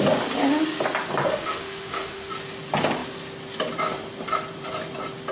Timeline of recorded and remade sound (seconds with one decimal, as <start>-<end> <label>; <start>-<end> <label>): 0.0-1.3 recorded; 1.3-2.3 remade; 2.3-5.3 recorded